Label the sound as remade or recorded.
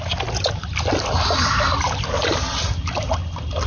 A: recorded